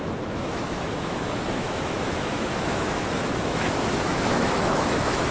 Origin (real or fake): fake